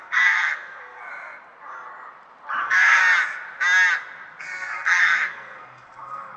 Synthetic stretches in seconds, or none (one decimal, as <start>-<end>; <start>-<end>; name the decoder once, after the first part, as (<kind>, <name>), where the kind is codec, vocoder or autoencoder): 0.0-1.0 (codec, SNAC); 2.6-3.0; 4.4-6.4